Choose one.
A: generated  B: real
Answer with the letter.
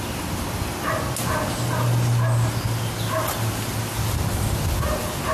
B